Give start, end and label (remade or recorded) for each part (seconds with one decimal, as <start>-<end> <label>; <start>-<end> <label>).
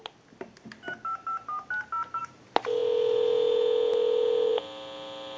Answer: 0.0-5.4 recorded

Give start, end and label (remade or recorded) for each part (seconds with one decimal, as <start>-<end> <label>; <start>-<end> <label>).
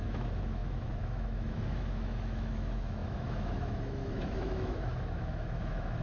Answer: 0.0-6.0 remade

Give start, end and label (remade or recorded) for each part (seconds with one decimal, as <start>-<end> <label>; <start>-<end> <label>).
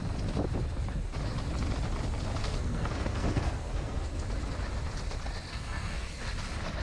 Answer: 0.0-2.4 recorded; 2.4-4.2 remade; 4.2-5.5 recorded; 5.5-6.1 remade; 6.1-6.8 recorded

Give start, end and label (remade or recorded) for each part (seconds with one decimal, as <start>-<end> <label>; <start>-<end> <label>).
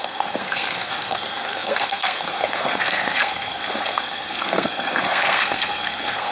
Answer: 0.0-6.3 remade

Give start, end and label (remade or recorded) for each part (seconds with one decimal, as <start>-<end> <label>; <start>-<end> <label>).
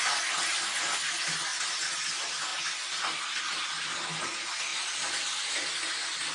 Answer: 0.0-6.3 recorded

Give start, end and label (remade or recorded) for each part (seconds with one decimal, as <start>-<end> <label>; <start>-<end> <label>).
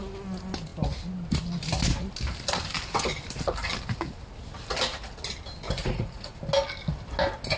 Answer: 0.0-5.8 recorded; 5.8-6.4 remade; 6.4-7.6 recorded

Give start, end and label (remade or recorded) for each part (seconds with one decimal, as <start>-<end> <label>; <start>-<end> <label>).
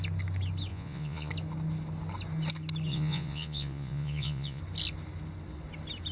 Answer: 0.0-0.7 recorded; 0.7-1.3 remade; 1.3-2.9 recorded; 2.9-4.6 remade; 4.6-6.1 recorded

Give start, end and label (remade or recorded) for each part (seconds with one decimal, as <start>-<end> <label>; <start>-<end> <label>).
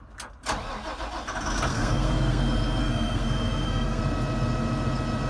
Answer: 0.0-1.7 recorded; 1.7-2.4 remade; 2.4-2.8 recorded; 2.8-4.0 remade; 4.0-5.3 recorded